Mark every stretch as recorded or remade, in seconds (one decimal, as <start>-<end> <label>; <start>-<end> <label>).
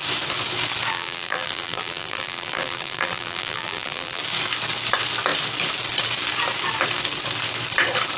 0.0-0.9 recorded; 0.9-4.2 remade; 4.2-8.2 recorded